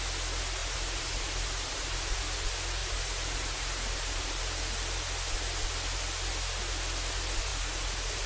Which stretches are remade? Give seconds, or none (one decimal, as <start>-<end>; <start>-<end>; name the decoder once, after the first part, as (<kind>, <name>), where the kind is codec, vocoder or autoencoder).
0.6-2.2 (vocoder, BigVGAN v2); 2.8-4.4; 7.5-8.3